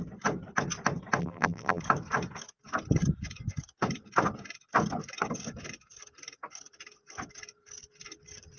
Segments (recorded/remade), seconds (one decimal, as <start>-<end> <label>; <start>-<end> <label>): 0.0-1.2 recorded; 1.2-1.8 remade; 1.8-8.6 recorded